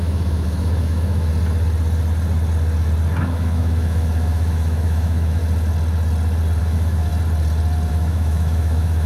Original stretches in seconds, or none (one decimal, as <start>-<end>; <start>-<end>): 1.3-3.2; 5.4-6.6; 7.1-7.9